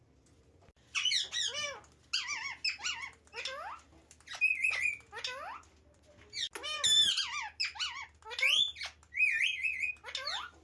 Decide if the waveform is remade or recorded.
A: recorded